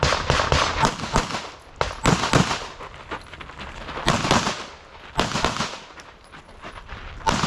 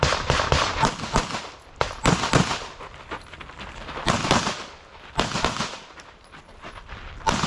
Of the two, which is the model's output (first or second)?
second